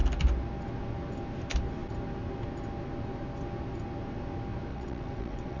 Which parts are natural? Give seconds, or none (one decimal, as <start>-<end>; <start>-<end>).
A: 0.0-4.7